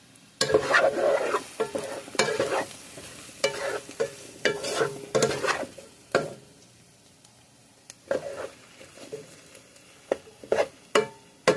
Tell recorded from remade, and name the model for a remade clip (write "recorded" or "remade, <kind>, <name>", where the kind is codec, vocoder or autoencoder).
recorded